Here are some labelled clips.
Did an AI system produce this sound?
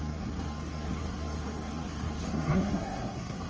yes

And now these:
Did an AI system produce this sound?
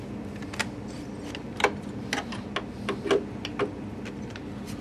no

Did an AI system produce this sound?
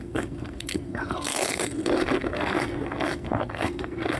yes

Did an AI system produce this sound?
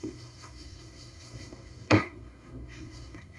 yes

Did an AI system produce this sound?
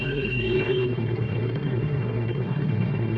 yes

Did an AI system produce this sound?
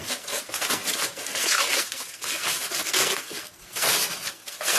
yes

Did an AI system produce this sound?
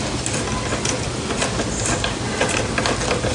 no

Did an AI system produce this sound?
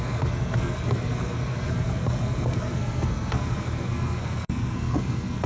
yes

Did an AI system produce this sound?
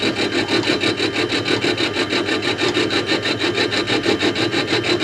no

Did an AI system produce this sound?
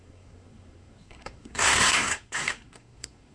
yes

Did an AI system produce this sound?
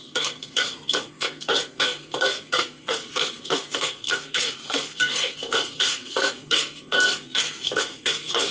yes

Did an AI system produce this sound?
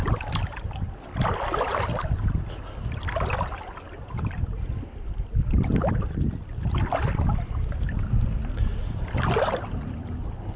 no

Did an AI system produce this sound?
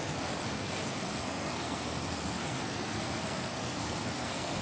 yes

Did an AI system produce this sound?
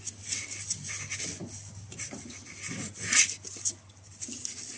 no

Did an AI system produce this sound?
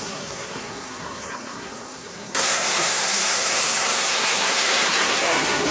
yes